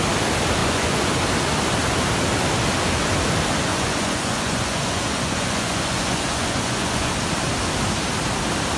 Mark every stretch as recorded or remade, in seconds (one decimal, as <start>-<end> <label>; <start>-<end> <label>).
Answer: 0.0-0.6 recorded; 0.6-1.1 remade; 1.1-3.7 recorded; 3.7-7.1 remade; 7.1-8.8 recorded